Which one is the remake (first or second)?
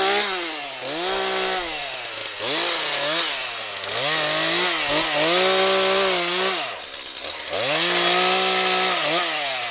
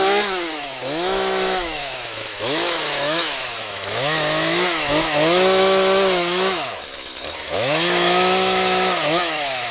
second